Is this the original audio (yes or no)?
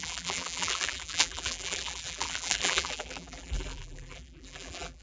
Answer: no